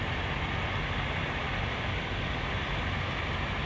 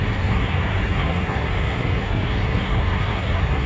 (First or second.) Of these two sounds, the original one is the first